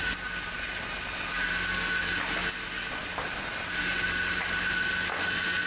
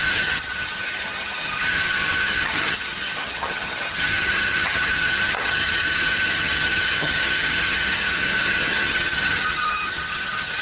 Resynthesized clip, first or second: second